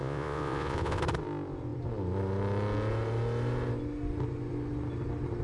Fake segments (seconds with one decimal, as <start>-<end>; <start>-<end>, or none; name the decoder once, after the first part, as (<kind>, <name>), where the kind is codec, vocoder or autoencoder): 0.0-1.0 (vocoder, Vocos)